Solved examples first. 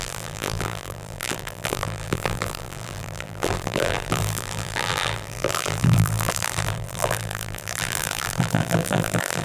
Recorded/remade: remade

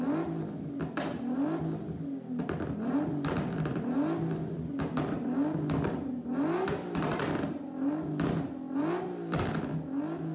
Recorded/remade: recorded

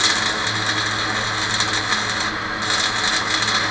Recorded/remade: recorded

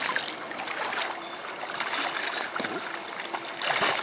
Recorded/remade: recorded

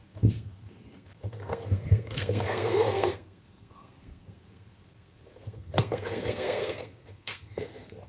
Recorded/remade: remade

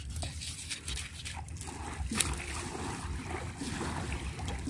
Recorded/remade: recorded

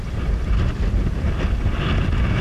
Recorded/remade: recorded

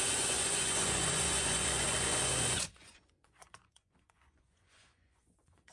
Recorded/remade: remade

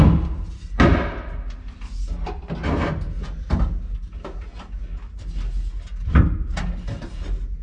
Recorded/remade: recorded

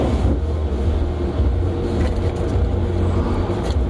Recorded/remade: recorded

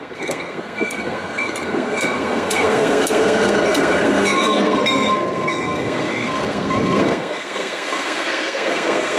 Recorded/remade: remade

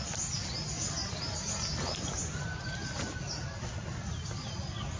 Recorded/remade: recorded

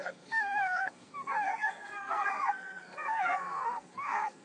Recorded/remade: remade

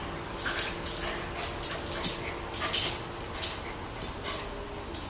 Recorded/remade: recorded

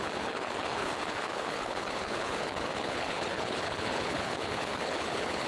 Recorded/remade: remade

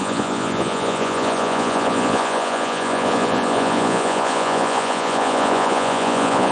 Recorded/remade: remade